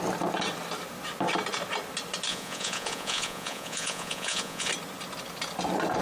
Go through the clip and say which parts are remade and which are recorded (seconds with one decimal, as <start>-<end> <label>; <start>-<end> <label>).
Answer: 0.0-2.3 recorded; 2.3-4.7 remade; 4.7-6.0 recorded